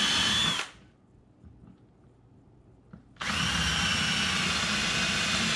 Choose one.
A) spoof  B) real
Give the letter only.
B